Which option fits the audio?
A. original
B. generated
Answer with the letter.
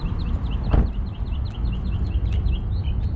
A